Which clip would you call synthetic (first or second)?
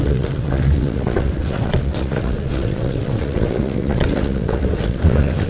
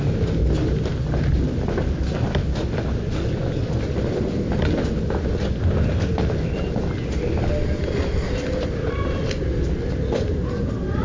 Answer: first